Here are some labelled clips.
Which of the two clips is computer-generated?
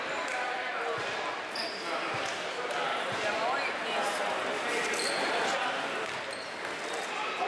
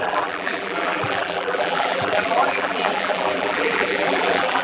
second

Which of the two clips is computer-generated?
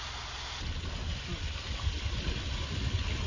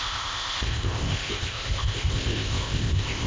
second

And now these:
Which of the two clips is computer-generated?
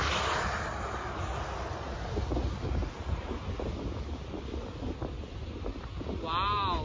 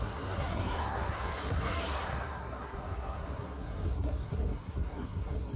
second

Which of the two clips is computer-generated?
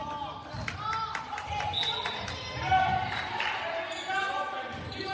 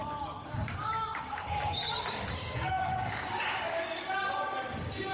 second